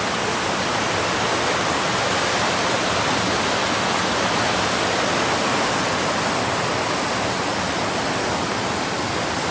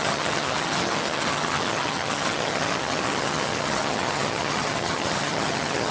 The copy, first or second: second